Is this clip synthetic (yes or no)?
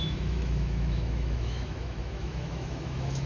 yes